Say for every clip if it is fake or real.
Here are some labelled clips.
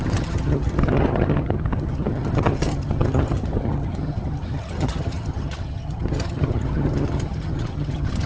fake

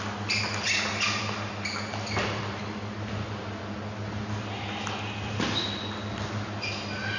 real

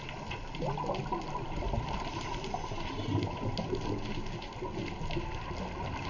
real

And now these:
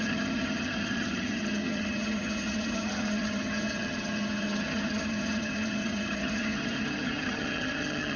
fake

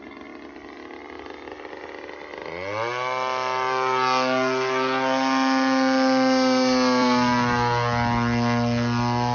real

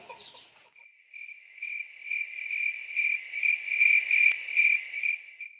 real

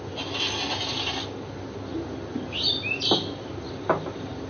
real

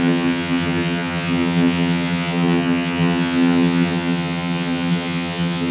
fake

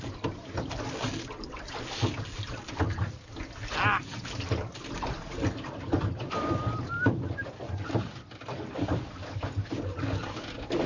real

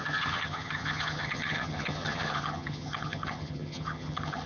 fake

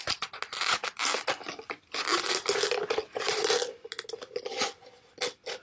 real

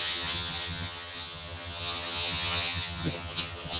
fake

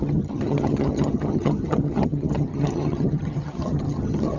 fake